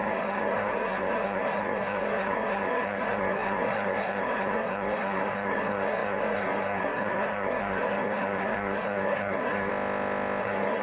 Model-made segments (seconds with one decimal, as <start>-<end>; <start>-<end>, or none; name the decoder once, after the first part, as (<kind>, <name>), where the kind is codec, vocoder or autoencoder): 0.0-9.7 (codec, SNAC); 10.4-10.8